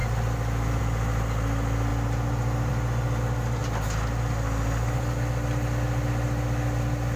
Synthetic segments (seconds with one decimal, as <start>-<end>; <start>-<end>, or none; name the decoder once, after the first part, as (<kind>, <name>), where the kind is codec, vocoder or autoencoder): 0.0-0.8 (vocoder, BigVGAN v2); 3.6-7.2